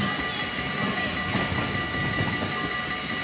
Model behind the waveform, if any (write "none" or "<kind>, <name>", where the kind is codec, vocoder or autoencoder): none